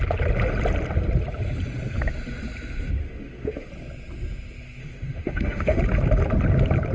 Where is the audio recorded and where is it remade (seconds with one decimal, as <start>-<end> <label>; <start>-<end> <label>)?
0.0-3.0 recorded; 3.0-3.7 remade; 3.7-4.8 recorded; 4.8-5.8 remade; 5.8-6.9 recorded